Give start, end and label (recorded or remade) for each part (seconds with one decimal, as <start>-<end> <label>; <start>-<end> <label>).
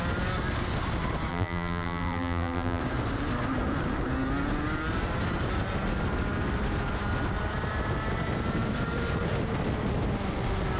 0.0-1.3 recorded; 1.3-2.8 remade; 2.8-10.8 recorded